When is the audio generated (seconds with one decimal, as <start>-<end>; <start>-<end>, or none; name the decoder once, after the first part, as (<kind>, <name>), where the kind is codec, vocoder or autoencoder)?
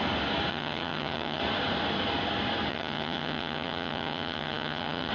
0.5-1.4 (vocoder, HiFi-GAN); 2.7-5.1